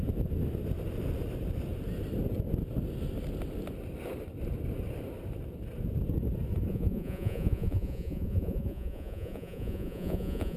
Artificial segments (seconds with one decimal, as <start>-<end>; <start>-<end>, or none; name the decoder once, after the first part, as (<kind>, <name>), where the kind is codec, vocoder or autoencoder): 6.7-10.6 (vocoder, Vocos)